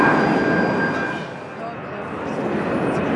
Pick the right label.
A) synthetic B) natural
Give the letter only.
B